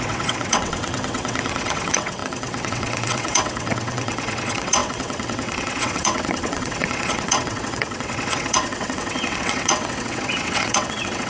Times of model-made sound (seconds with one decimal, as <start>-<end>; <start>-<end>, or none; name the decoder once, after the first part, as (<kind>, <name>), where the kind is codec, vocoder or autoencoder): 0.0-11.3 (vocoder, WaveNeXt)